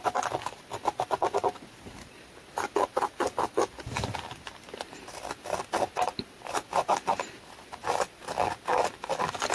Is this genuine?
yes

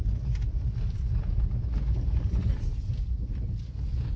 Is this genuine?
yes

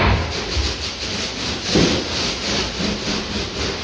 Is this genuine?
yes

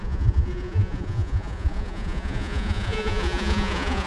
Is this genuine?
no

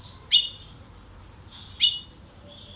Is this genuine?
yes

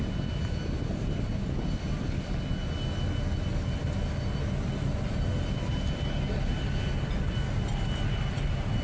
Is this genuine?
yes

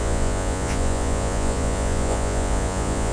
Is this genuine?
no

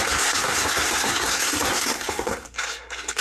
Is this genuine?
no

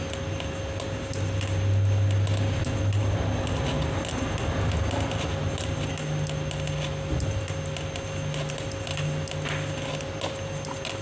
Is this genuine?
yes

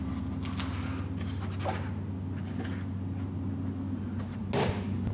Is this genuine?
yes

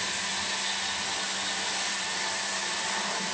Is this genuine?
yes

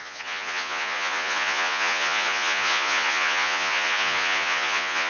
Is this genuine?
no